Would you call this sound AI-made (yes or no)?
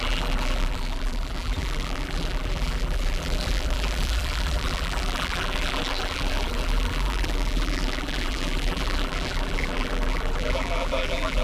yes